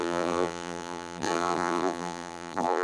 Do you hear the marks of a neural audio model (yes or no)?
yes